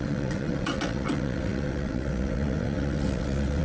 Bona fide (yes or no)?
no